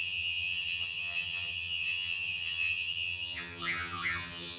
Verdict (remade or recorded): remade